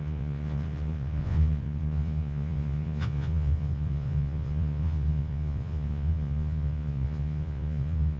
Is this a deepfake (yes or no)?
yes